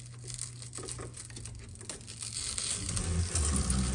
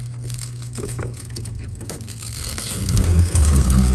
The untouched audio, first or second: first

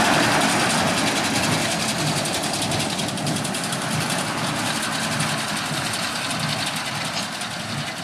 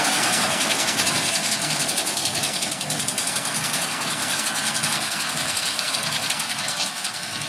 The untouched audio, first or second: first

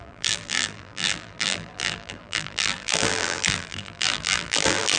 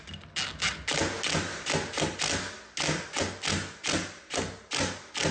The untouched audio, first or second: second